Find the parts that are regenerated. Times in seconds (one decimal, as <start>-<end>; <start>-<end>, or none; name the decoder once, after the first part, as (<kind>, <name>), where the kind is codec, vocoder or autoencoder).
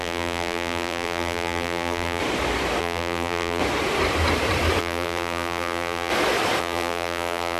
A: 0.0-2.2 (vocoder, BigVGAN v2); 2.8-3.6; 4.8-6.1; 6.6-7.6